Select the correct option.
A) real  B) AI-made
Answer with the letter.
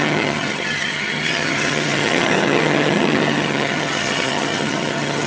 B